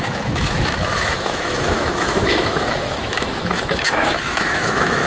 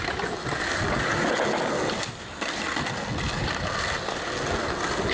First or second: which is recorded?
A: second